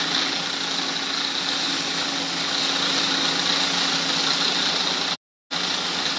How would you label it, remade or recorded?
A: recorded